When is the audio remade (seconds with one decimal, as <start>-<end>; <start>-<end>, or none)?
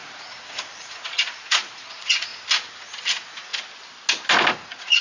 0.0-2.3; 3.1-3.5; 4.5-5.0